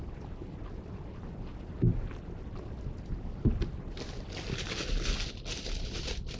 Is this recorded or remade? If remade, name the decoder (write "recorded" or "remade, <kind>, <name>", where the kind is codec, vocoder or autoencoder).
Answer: recorded